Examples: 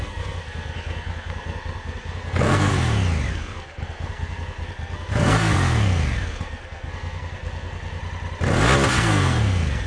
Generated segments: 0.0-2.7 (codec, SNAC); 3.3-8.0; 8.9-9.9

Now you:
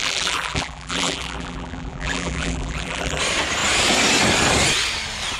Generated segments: 0.0-3.2 (vocoder, BigVGAN v2)